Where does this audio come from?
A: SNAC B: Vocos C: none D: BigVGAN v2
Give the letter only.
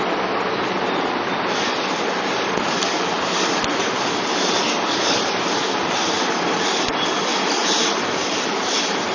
C